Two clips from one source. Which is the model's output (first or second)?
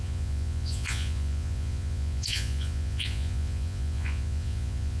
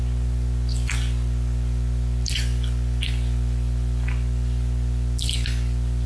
first